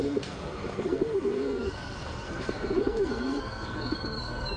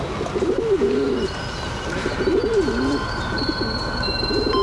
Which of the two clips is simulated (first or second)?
first